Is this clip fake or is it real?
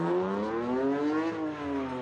real